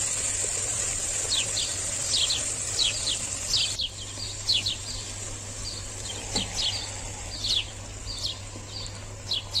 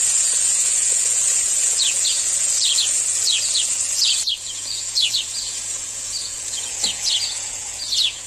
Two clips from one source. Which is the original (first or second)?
first